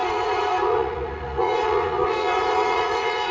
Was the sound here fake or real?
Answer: fake